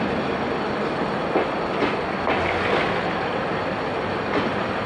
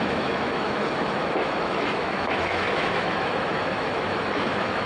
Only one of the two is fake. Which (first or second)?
second